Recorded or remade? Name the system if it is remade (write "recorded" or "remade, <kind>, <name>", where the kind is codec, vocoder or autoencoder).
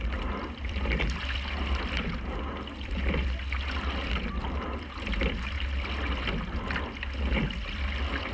recorded